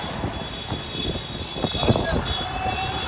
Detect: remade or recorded remade